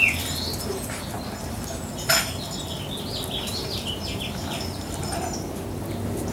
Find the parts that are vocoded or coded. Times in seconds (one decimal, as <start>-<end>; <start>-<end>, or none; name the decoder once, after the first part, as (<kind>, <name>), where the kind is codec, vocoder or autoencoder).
3.5-5.6 (vocoder, BigVGAN v2)